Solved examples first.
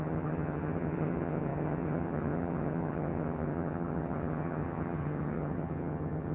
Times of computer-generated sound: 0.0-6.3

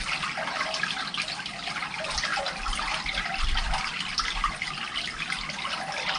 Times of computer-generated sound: none

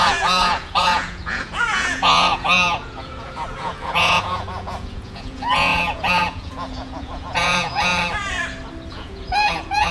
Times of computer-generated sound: 0.0-7.9; 8.9-9.9